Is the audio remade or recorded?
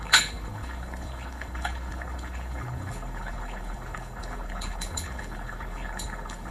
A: remade